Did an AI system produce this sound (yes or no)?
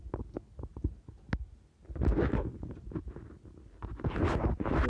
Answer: no